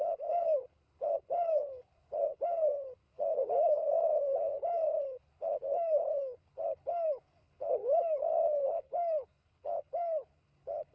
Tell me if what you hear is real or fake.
fake